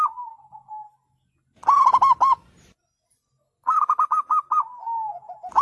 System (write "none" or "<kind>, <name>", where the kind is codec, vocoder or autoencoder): none